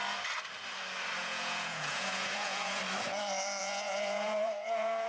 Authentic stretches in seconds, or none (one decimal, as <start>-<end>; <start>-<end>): 0.0-1.2; 2.8-3.6

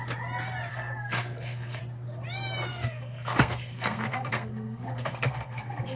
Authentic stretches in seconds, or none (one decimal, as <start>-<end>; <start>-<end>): 0.0-0.7; 1.8-2.7

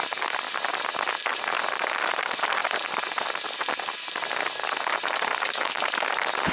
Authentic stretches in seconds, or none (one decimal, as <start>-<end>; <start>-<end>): 0.0-6.5

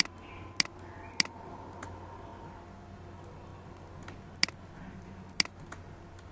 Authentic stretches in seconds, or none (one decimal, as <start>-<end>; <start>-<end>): 0.0-6.3

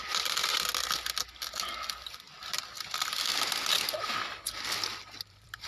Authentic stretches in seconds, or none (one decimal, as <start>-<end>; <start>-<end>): 0.7-1.7; 3.3-4.7

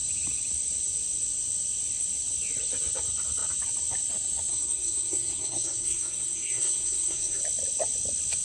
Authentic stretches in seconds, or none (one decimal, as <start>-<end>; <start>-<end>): 0.0-4.5; 7.4-8.4